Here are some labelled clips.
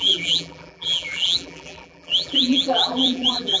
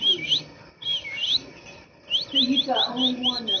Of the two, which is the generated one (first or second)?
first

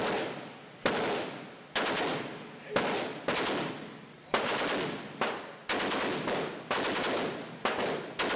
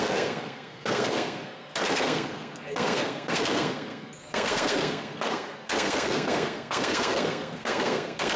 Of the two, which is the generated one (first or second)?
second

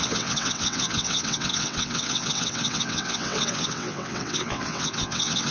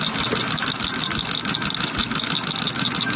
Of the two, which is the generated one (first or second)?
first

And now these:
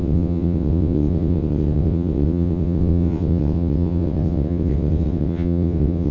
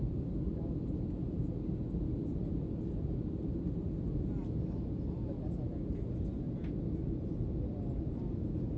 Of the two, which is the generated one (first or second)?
first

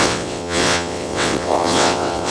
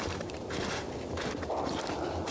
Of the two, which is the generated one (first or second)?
first